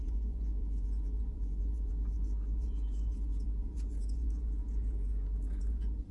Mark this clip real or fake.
fake